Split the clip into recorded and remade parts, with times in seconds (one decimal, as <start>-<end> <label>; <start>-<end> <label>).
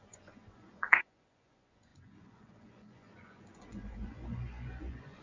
0.0-5.2 remade